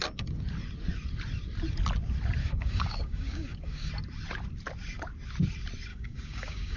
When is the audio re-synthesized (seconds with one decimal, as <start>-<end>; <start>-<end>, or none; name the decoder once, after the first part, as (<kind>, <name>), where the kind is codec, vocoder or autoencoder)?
2.4-3.9 (codec, DAC); 5.9-6.8

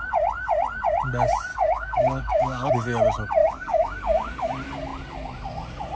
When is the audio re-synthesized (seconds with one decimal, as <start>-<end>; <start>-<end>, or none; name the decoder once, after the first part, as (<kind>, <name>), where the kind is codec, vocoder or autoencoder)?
1.5-2.7 (codec, DAC); 3.4-4.5

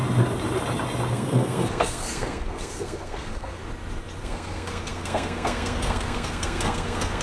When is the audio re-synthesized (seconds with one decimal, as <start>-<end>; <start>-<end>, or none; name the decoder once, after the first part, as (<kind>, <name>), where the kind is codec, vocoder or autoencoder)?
1.1-3.6 (codec, SNAC); 4.2-7.2